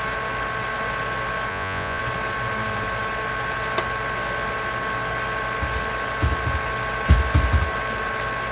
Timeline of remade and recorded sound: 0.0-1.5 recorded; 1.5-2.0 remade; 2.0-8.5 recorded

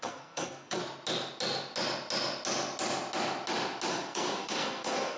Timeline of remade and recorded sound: 0.0-0.8 remade; 0.8-3.9 recorded; 3.9-5.2 remade

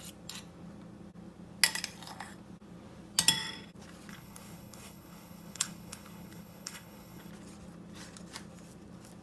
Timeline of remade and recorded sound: 0.0-4.1 recorded; 4.1-7.3 remade; 7.3-9.2 recorded

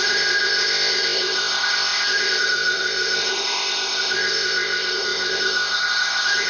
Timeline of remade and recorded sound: 0.0-6.5 remade

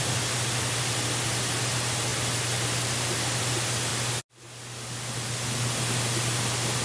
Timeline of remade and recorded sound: 0.0-6.8 recorded

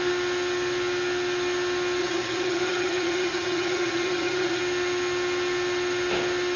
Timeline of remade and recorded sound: 0.0-2.0 recorded; 2.0-4.6 remade; 4.6-6.6 recorded

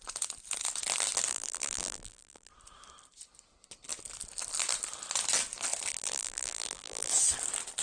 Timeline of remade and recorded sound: 0.0-1.3 recorded; 1.3-2.5 remade; 2.5-5.9 recorded; 5.9-7.1 remade; 7.1-7.8 recorded